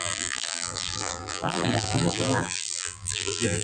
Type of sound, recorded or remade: remade